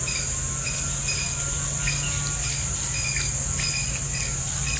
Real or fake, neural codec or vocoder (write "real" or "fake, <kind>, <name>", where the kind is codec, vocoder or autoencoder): real